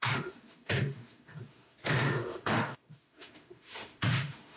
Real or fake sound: fake